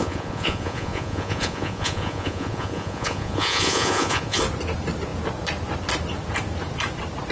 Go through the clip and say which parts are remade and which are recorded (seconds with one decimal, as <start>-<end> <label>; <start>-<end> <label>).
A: 0.0-4.4 remade; 4.4-7.3 recorded